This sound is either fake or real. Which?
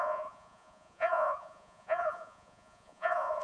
fake